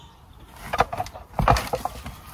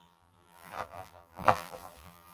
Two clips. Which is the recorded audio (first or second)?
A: first